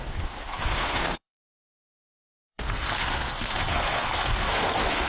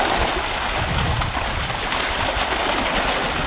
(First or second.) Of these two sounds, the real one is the second